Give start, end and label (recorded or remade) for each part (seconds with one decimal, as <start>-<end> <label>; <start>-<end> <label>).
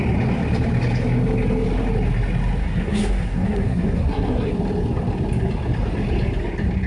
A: 0.0-2.6 recorded; 2.6-4.5 remade; 4.5-6.9 recorded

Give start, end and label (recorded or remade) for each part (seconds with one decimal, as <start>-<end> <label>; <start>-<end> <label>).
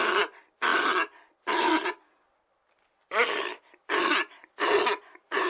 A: 0.0-5.5 recorded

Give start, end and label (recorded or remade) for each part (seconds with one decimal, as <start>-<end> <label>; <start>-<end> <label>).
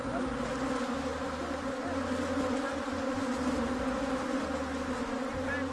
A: 0.0-5.7 recorded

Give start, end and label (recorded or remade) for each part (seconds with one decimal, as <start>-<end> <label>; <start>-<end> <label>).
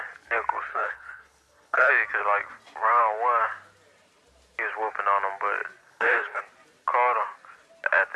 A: 0.0-0.7 recorded; 0.7-1.9 remade; 1.9-5.8 recorded; 5.8-6.4 remade; 6.4-8.2 recorded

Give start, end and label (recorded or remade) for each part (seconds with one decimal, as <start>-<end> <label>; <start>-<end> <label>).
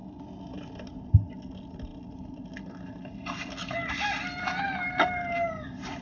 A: 0.0-6.0 recorded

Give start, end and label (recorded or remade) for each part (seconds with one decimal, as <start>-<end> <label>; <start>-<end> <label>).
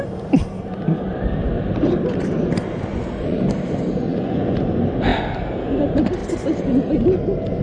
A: 0.0-2.9 recorded; 2.9-3.4 remade; 3.4-4.1 recorded; 4.1-4.6 remade; 4.6-7.6 recorded